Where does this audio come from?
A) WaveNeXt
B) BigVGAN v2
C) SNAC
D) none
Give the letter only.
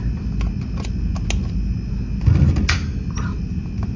D